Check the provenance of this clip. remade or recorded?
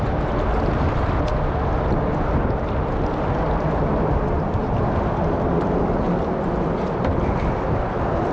recorded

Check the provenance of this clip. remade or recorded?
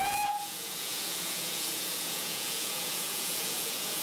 remade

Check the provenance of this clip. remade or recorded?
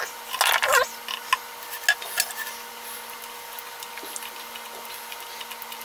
recorded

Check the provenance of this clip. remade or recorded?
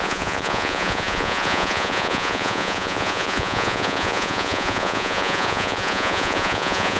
remade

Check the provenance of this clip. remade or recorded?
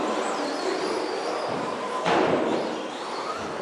recorded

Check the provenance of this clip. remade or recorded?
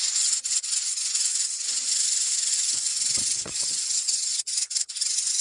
remade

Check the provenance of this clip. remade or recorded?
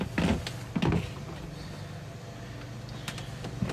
recorded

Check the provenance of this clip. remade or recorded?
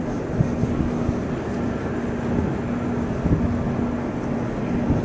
recorded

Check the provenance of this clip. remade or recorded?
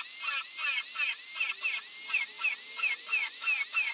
recorded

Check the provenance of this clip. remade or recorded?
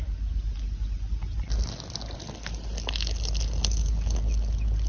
recorded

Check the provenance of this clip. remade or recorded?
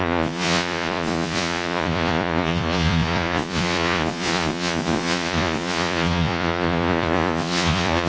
remade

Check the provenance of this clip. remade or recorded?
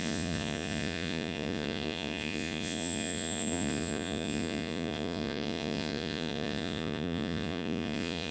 remade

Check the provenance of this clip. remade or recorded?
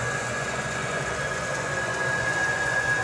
remade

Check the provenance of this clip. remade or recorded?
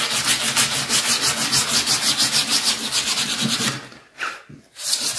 recorded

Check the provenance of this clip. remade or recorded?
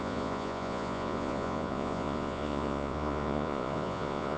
remade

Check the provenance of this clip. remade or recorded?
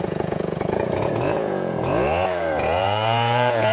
remade